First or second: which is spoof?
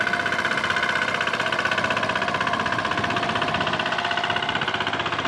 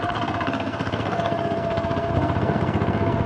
second